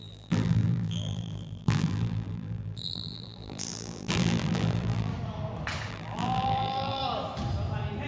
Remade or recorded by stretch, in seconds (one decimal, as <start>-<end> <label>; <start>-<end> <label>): 0.0-5.1 remade; 5.1-5.9 recorded; 5.9-7.0 remade; 7.0-8.1 recorded